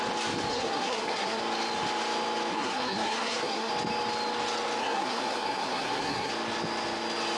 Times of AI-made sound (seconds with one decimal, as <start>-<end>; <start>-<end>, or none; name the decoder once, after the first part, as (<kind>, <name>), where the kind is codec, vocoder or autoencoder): 0.5-1.4 (codec, SNAC); 2.5-3.7; 4.8-6.3